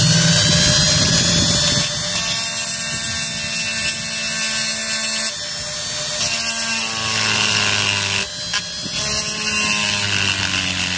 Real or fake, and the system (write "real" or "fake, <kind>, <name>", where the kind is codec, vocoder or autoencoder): real